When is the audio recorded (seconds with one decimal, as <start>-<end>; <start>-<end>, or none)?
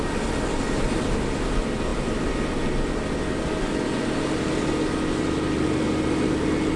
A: 0.0-6.8